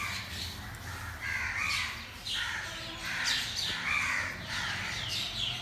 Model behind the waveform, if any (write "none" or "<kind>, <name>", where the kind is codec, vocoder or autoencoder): none